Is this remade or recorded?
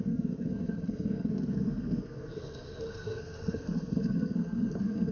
remade